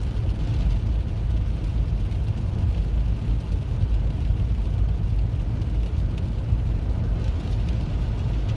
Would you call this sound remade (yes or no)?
no